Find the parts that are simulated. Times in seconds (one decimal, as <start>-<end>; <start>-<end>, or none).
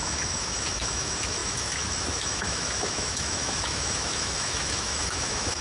0.0-5.6